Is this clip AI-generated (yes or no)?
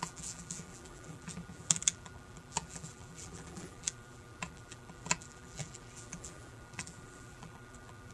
yes